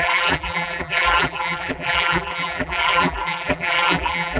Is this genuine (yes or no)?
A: no